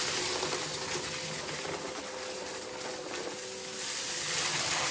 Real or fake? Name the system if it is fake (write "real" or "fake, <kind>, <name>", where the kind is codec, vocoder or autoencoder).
real